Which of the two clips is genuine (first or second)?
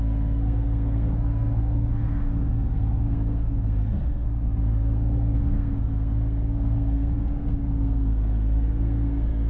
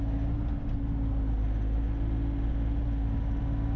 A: second